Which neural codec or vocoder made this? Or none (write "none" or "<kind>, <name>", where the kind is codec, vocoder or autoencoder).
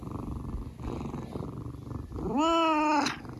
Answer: none